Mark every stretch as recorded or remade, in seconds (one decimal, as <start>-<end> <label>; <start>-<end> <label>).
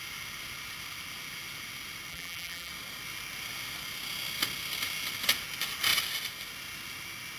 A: 0.0-2.1 recorded; 2.1-2.7 remade; 2.7-7.4 recorded